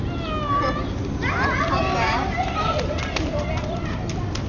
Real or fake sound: real